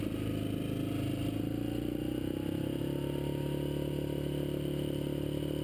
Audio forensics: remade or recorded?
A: recorded